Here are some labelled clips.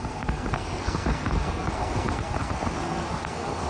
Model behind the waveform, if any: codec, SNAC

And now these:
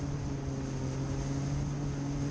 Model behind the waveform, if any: none